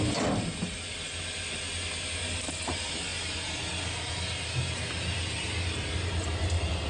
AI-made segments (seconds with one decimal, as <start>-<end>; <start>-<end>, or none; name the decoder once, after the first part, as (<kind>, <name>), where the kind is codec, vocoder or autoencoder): none